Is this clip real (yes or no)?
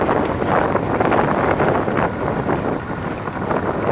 yes